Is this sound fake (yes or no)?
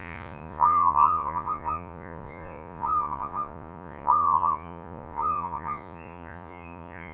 yes